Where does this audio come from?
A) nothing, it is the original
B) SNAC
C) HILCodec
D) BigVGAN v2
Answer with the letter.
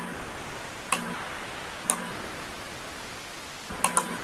A